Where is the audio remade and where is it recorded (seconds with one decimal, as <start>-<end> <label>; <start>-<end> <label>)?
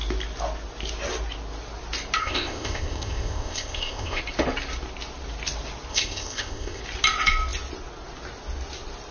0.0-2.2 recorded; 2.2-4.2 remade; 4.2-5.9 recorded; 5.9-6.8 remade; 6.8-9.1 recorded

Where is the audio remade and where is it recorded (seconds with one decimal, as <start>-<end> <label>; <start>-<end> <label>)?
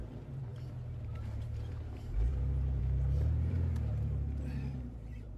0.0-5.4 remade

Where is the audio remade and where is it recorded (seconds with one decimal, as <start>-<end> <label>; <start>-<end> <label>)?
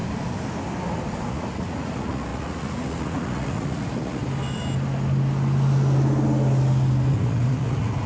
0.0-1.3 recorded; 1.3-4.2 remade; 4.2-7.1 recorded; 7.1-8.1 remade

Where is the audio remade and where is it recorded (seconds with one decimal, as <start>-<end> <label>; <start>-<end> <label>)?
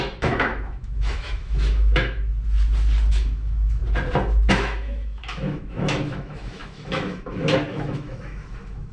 0.0-2.3 remade; 2.3-3.1 recorded; 3.1-3.8 remade; 3.8-4.5 recorded; 4.5-8.9 remade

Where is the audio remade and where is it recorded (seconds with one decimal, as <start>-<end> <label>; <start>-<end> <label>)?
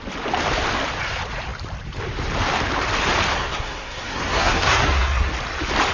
0.0-3.3 recorded; 3.3-5.3 remade; 5.3-5.9 recorded